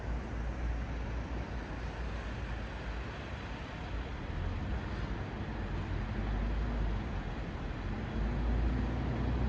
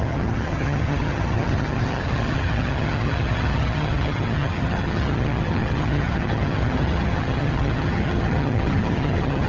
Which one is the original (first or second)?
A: first